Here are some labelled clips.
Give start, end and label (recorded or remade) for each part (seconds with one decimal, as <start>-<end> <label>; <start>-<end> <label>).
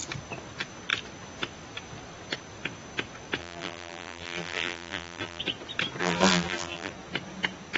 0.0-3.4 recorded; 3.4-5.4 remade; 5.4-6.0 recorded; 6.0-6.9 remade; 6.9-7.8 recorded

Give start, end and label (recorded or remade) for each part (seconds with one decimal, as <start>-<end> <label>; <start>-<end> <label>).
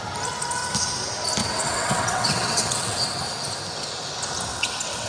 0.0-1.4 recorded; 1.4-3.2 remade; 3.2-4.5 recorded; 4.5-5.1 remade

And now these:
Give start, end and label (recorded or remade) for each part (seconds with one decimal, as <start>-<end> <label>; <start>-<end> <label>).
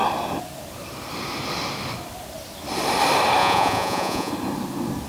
0.0-3.4 recorded; 3.4-4.3 remade; 4.3-5.1 recorded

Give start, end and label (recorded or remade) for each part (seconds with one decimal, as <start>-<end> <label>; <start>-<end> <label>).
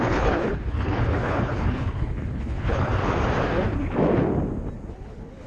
0.0-2.9 remade; 2.9-4.9 recorded; 4.9-5.5 remade